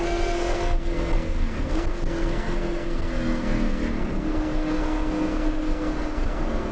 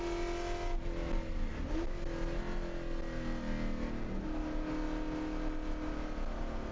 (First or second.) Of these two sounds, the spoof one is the first